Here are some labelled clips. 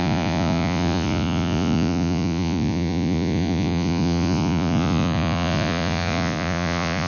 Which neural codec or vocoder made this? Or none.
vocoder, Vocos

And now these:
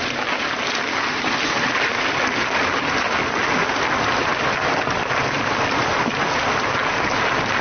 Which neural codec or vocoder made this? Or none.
none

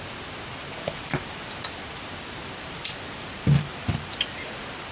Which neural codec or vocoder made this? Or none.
none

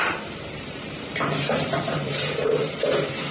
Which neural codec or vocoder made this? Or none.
vocoder, BigVGAN v2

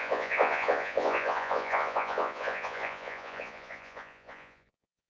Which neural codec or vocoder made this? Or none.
vocoder, Vocos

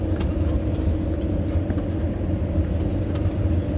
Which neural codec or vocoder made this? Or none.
none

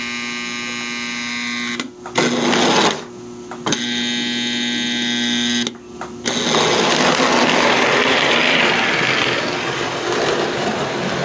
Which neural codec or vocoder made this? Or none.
none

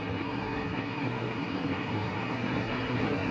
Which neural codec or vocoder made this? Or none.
codec, SNAC